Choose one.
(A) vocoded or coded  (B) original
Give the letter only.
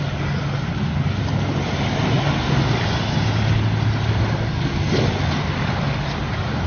B